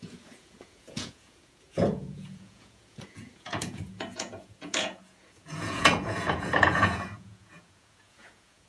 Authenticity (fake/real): fake